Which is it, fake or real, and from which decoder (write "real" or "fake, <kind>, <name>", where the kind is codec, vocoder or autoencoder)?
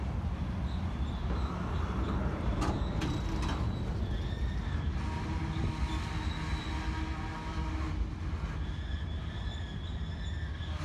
real